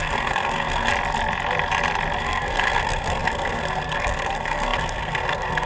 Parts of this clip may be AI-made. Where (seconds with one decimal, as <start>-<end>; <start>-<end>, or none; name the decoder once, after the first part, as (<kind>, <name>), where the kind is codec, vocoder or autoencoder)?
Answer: 0.0-0.9 (codec, SNAC); 2.2-5.7

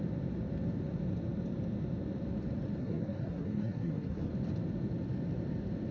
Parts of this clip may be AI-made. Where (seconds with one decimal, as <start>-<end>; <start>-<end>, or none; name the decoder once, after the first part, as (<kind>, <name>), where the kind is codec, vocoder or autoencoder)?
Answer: 2.8-4.3 (codec, SNAC)

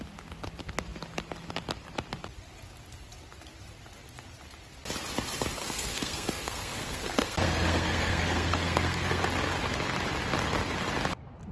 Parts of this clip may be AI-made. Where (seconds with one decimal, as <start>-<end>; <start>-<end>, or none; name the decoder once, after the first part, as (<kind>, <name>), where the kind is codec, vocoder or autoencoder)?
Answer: 5.6-9.2 (codec, SNAC)

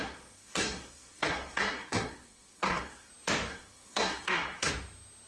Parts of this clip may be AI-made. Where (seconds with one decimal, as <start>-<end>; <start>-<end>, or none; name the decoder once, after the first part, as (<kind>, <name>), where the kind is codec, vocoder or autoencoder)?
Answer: 0.0-3.1 (codec, SNAC); 3.5-4.7

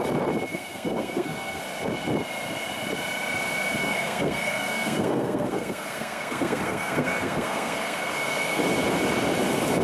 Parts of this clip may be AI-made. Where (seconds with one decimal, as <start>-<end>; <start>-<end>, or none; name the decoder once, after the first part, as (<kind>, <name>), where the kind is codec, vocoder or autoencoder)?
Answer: 0.5-1.6 (codec, SNAC); 3.8-8.6

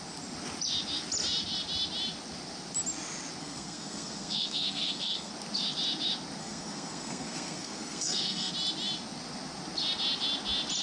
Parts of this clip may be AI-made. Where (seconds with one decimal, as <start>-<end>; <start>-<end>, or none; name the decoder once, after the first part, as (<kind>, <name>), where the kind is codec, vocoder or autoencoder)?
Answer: 3.4-5.3 (codec, SNAC); 6.4-8.5

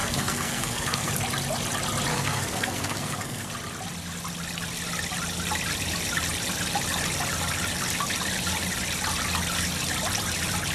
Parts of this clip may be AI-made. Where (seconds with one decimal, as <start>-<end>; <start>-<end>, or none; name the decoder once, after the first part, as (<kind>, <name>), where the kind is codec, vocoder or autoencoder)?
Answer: 0.0-1.1 (codec, SNAC); 2.1-3.5

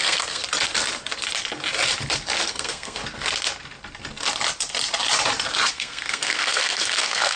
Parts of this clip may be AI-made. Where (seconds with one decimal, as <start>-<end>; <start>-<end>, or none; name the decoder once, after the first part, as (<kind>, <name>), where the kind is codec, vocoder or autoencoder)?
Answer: 0.0-0.4 (codec, SNAC); 2.5-3.0; 5.7-7.4